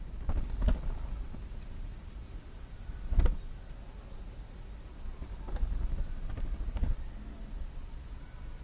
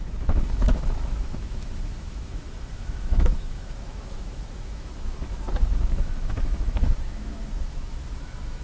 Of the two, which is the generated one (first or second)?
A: second